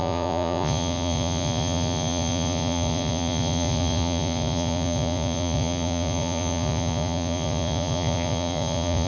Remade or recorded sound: remade